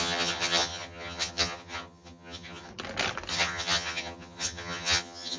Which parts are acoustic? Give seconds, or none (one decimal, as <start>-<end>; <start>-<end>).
2.7-3.3